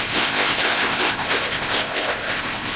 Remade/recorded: remade